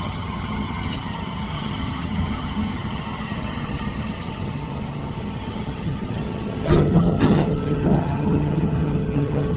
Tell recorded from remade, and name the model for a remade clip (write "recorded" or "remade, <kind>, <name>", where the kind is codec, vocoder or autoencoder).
remade, vocoder, HiFi-GAN